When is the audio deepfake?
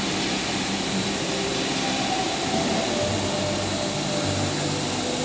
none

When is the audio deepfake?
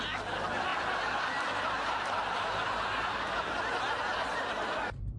none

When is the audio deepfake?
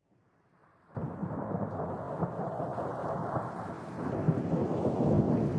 0.6-4.0 (vocoder, BigVGAN v2)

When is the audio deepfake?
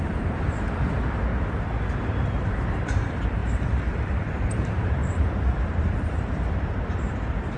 0.0-1.3 (vocoder, BigVGAN v2); 2.0-3.4; 3.9-7.6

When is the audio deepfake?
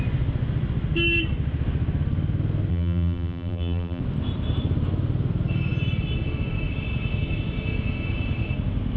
2.7-4.0 (vocoder, BigVGAN v2)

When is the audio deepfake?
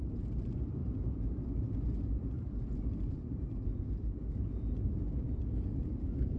0.0-6.4 (vocoder, BigVGAN v2)